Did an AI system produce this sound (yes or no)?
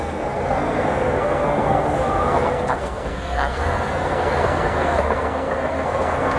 yes